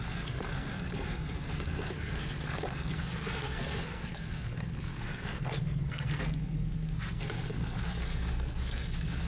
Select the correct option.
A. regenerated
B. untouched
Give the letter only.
A